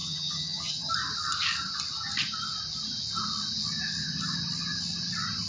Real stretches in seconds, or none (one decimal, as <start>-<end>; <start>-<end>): 0.9-5.5